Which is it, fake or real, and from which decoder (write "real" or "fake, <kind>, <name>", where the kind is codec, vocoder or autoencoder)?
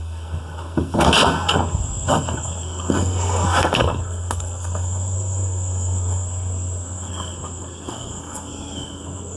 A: fake, codec, SNAC